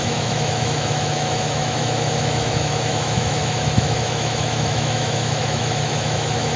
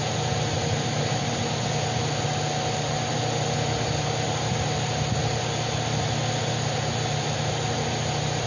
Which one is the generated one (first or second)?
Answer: first